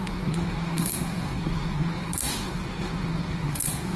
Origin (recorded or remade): remade